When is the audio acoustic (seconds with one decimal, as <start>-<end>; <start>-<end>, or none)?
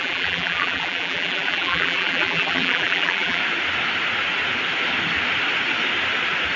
3.4-6.6